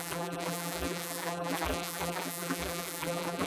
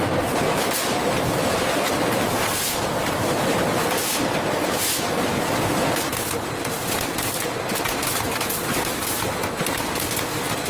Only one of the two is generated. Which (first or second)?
first